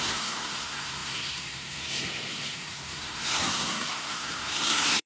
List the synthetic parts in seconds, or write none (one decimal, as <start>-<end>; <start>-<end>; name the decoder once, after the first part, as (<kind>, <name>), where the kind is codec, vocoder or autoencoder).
0.0-5.1 (codec, SNAC)